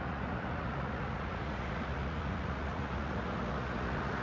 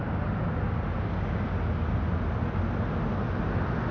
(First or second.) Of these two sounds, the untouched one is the second